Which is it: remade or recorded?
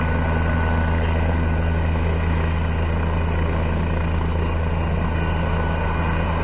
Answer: recorded